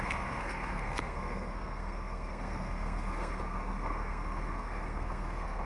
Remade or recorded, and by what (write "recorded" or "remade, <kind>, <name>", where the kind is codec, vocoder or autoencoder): remade, codec, SNAC